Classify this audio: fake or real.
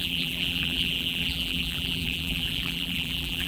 fake